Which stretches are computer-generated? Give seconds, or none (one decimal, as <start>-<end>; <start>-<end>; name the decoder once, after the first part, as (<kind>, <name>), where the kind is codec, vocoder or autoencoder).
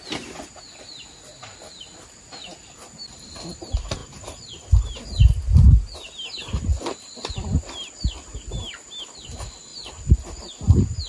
none